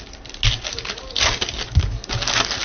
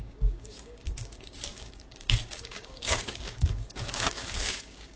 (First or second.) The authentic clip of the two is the first